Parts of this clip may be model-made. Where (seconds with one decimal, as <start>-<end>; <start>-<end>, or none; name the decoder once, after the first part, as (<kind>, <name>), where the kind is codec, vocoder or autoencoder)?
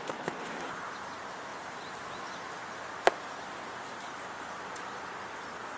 none